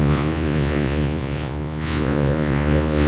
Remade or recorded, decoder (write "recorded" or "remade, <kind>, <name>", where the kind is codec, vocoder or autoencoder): remade, vocoder, Vocos